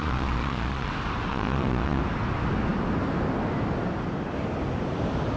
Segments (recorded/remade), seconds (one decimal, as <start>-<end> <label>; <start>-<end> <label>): 0.0-0.9 remade; 0.9-1.3 recorded; 1.3-2.0 remade; 2.0-5.4 recorded